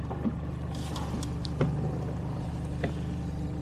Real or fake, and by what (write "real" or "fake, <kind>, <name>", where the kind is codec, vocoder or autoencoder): real